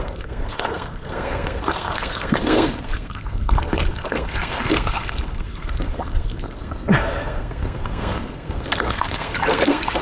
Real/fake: fake